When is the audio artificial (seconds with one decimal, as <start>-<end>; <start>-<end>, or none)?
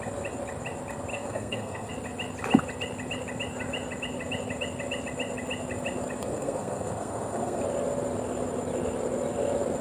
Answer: 1.1-1.9; 6.2-7.6